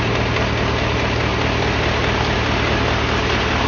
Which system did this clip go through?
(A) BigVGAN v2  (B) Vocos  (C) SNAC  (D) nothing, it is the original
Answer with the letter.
D